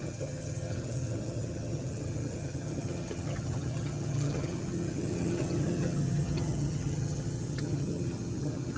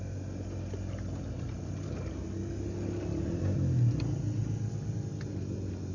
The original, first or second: second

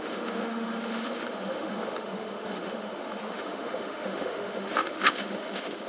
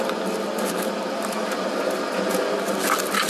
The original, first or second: second